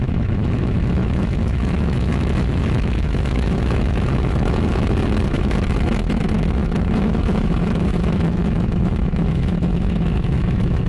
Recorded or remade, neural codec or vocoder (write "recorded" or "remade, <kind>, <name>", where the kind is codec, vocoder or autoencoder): remade, autoencoder, DAC-VAE